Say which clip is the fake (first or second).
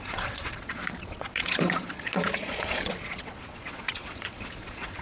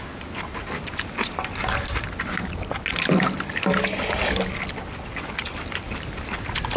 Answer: first